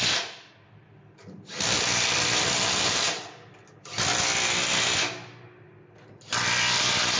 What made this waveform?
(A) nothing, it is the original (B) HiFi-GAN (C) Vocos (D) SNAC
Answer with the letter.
A